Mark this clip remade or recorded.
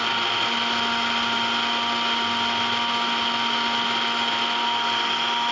recorded